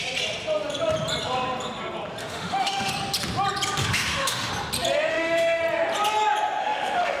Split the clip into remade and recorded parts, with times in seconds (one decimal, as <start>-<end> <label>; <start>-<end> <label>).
0.0-2.2 recorded; 2.2-2.9 remade; 2.9-3.8 recorded; 3.8-4.5 remade; 4.5-5.1 recorded; 5.1-5.6 remade; 5.6-6.6 recorded; 6.6-7.2 remade